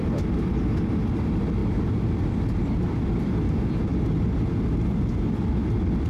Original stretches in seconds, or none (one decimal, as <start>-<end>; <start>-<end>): 0.0-6.1